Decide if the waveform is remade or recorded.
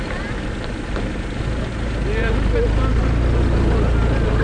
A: recorded